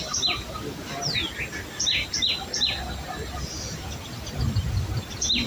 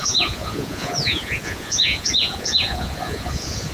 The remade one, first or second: second